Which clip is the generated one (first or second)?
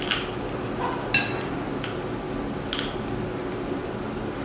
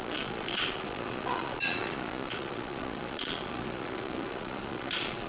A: second